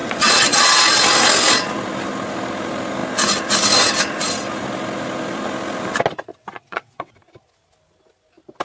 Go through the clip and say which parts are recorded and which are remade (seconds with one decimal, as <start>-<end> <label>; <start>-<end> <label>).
0.0-0.8 remade; 0.8-6.3 recorded; 6.3-7.1 remade; 7.1-8.6 recorded